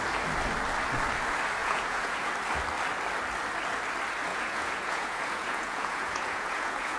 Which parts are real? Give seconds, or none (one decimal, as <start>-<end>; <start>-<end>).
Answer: 0.0-1.6; 2.3-4.3